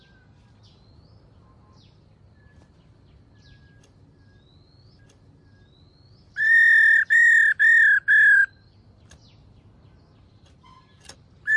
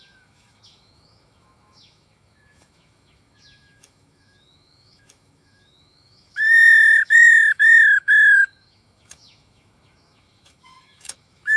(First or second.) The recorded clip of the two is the first